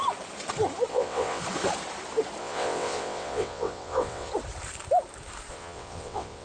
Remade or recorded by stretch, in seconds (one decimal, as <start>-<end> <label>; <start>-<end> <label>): 0.0-0.9 recorded; 0.9-1.4 remade; 1.4-2.4 recorded; 2.4-4.3 remade; 4.3-5.5 recorded; 5.5-6.4 remade